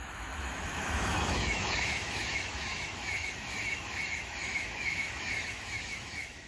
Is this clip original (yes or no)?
no